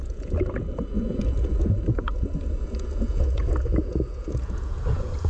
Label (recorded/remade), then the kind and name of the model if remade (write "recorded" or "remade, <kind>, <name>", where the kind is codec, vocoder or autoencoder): remade, vocoder, Vocos